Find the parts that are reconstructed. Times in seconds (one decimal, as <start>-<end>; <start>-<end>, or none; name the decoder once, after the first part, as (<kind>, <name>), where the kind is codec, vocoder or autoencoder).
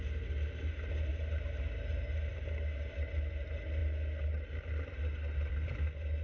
none